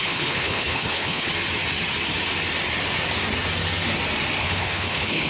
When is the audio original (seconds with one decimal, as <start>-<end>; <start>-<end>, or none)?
1.3-4.4